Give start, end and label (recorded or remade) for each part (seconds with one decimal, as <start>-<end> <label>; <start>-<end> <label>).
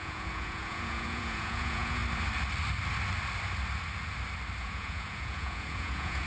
0.0-2.0 remade; 2.0-4.6 recorded; 4.6-6.3 remade